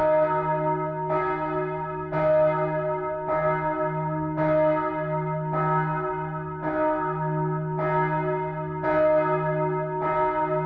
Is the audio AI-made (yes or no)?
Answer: no